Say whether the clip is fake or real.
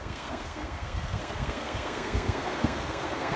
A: fake